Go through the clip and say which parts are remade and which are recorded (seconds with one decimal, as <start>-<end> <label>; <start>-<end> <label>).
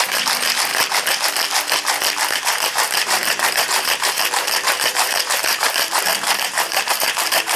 0.0-0.7 remade; 0.7-2.3 recorded; 2.3-7.6 remade